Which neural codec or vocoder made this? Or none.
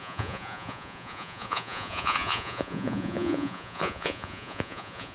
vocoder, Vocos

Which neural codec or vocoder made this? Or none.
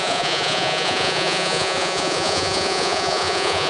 vocoder, Vocos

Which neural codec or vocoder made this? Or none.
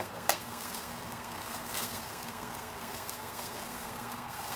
codec, SNAC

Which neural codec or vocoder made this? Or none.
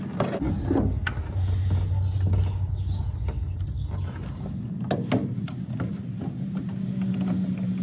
none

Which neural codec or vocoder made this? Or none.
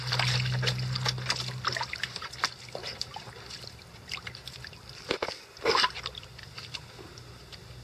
none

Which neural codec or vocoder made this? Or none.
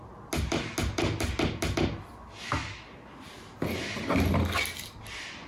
none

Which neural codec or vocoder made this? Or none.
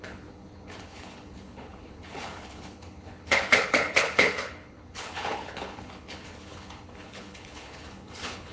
codec, HILCodec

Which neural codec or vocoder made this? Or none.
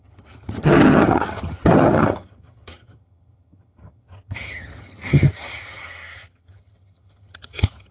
vocoder, HiFi-GAN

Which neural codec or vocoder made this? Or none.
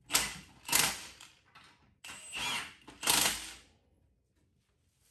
none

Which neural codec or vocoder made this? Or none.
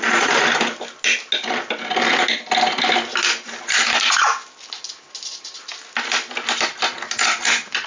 none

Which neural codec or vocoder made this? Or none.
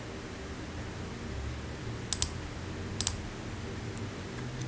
none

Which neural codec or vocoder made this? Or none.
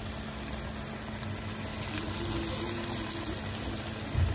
none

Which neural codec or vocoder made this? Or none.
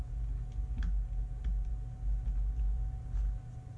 none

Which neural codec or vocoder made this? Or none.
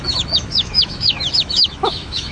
autoencoder, DAC-VAE